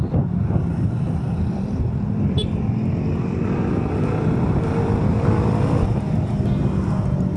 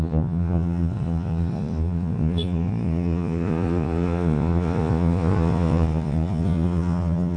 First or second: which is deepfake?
second